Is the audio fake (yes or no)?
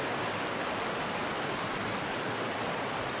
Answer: no